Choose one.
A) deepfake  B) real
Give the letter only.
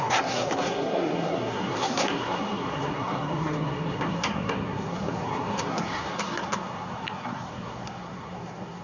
A